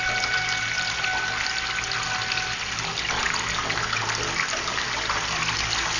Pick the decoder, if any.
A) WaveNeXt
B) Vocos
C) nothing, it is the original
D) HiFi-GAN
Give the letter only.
C